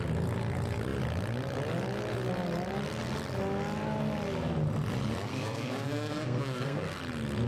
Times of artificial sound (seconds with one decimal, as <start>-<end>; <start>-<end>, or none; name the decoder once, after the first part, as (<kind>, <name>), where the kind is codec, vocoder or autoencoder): 5.3-7.0 (codec, SNAC)